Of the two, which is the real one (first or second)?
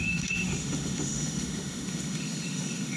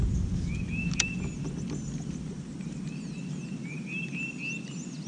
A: second